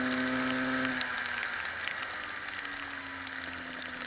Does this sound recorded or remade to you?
recorded